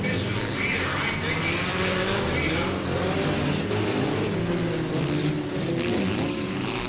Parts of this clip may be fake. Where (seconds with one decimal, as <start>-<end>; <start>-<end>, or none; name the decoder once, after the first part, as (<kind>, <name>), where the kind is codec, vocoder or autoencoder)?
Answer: none